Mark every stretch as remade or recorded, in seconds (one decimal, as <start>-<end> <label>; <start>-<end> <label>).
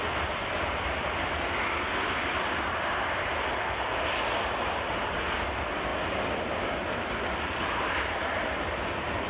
0.0-9.3 recorded